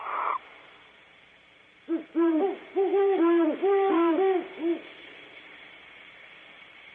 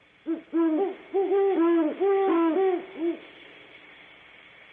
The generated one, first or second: first